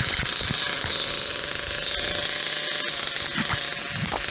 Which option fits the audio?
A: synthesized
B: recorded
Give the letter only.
B